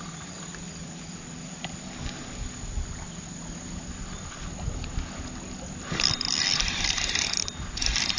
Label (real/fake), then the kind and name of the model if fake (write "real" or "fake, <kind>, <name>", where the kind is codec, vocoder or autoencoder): real